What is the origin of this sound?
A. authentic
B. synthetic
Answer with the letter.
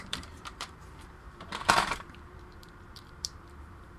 B